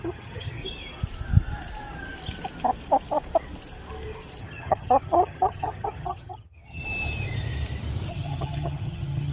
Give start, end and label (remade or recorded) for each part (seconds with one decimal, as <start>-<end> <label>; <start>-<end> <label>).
0.0-0.6 remade; 0.6-4.4 recorded; 4.4-6.8 remade; 6.8-8.1 recorded; 8.1-9.3 remade